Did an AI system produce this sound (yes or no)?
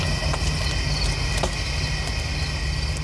no